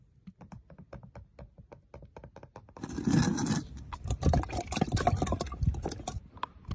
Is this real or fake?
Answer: real